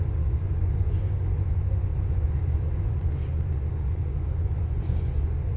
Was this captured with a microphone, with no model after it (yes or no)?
no